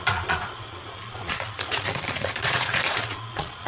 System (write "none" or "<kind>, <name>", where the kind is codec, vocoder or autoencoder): vocoder, Vocos